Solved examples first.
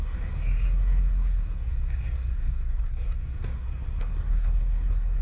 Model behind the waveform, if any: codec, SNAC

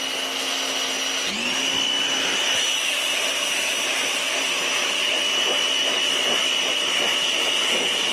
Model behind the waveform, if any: none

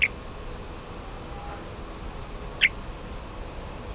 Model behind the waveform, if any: none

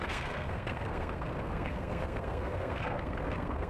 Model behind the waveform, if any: codec, SNAC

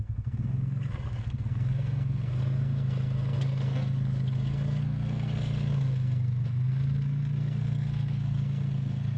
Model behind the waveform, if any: codec, SNAC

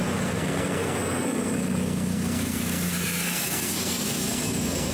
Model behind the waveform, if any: codec, SNAC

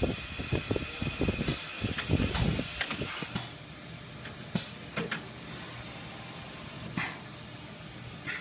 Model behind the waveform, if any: none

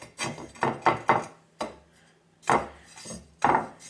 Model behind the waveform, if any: none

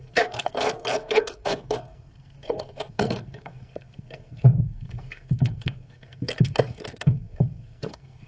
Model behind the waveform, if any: codec, SNAC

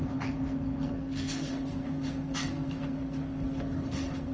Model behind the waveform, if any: codec, SNAC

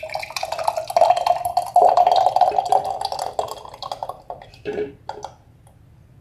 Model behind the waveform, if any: none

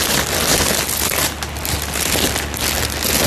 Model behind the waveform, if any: none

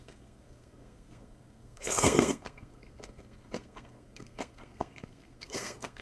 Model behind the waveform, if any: codec, SNAC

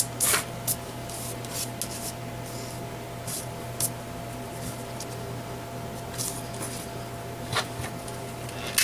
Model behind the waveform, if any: none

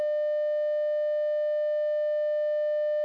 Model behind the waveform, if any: none